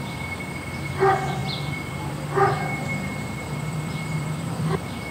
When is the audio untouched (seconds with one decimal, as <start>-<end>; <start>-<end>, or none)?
none